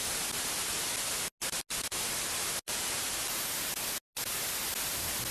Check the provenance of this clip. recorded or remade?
recorded